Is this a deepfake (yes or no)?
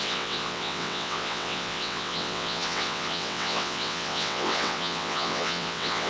yes